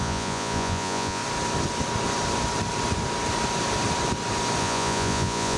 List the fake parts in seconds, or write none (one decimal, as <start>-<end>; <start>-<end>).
0.0-1.2; 4.6-5.6